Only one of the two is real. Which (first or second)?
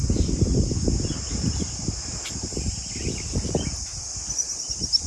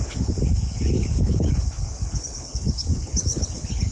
first